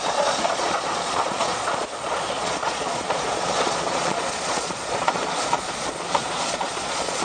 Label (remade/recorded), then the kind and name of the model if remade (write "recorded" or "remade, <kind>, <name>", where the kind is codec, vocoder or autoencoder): remade, vocoder, Vocos